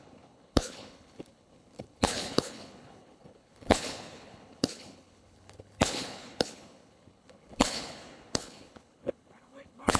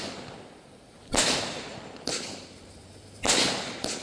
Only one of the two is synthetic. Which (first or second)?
first